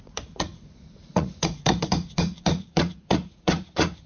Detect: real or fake fake